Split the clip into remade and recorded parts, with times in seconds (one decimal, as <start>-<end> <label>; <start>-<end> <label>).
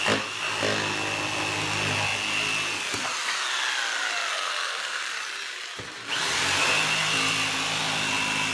0.0-4.3 recorded; 4.3-5.1 remade; 5.1-8.5 recorded